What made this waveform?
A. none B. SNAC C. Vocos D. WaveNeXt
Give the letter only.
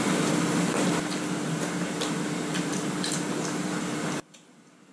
A